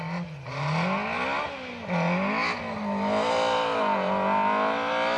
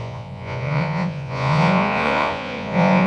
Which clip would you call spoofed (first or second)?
second